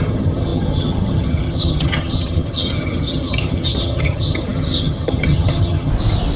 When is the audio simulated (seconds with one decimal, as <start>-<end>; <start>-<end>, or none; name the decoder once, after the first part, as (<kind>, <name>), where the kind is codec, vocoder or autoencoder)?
0.0-5.9 (vocoder, HiFi-GAN)